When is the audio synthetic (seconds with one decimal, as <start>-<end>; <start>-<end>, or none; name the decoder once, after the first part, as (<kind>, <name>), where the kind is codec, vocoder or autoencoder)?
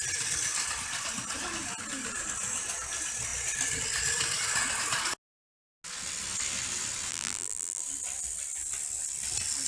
7.1-7.8 (vocoder, BigVGAN v2)